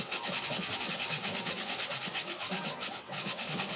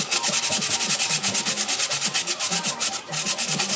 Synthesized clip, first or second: first